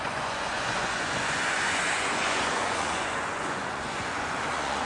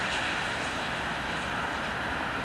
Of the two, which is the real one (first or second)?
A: second